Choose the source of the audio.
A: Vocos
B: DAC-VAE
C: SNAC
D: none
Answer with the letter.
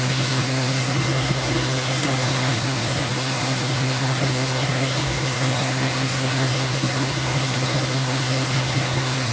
C